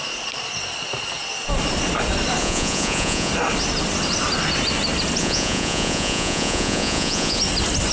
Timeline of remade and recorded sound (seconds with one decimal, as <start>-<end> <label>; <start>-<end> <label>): 0.0-2.4 recorded; 2.4-3.3 remade; 3.3-5.2 recorded; 5.2-7.4 remade; 7.4-7.9 recorded